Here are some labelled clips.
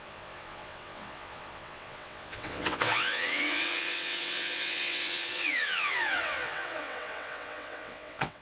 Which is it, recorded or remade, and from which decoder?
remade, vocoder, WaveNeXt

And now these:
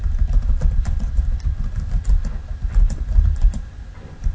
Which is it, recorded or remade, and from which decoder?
remade, vocoder, BigVGAN v2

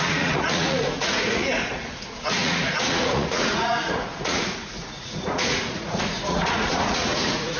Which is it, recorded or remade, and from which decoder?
remade, vocoder, Vocos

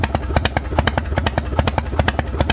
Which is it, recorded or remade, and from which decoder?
recorded